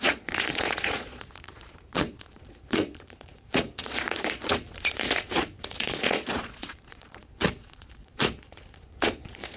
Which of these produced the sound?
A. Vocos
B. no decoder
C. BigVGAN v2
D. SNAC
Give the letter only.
A